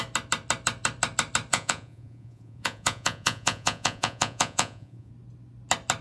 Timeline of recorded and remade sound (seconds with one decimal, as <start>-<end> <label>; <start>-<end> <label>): 0.0-1.5 recorded; 1.5-5.1 remade; 5.1-6.0 recorded